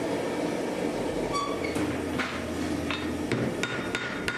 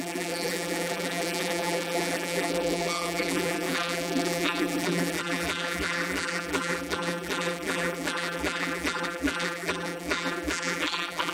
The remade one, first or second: second